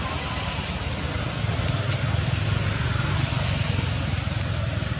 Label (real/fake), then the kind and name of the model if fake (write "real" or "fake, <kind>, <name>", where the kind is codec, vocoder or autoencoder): real